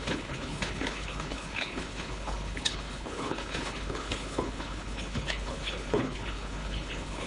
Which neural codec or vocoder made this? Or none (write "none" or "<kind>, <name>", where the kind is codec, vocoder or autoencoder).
codec, HILCodec